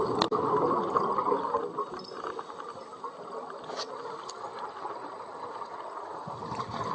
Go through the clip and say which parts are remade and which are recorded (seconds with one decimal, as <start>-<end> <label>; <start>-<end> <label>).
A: 0.0-4.5 recorded; 4.5-5.8 remade; 5.8-6.9 recorded